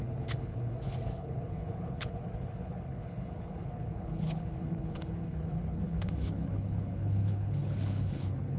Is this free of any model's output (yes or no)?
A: no